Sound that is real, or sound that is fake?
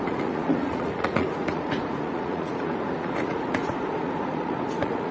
fake